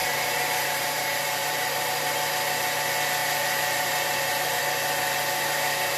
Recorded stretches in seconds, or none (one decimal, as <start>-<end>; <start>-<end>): 2.1-3.2; 4.6-6.0